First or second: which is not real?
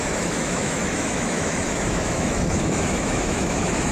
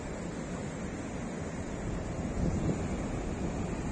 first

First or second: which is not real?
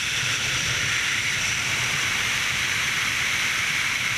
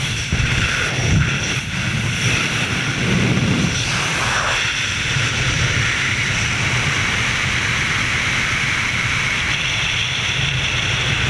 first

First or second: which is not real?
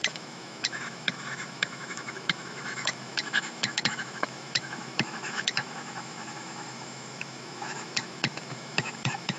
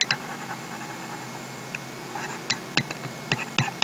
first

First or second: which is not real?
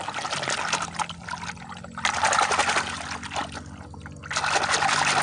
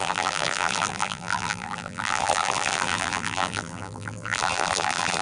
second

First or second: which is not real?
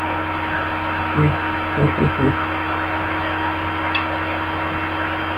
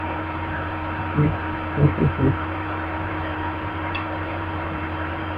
second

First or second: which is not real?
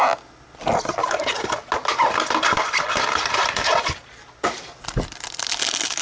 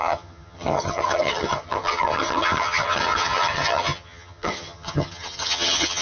second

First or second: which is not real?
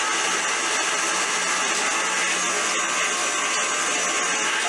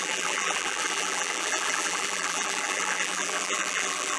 second